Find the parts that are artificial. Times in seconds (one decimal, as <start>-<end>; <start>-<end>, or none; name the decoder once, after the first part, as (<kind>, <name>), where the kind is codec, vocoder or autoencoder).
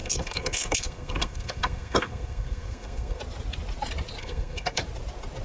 0.0-3.2 (codec, SNAC); 4.2-4.8